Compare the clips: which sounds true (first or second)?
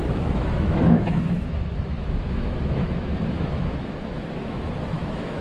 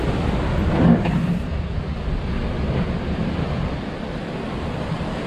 second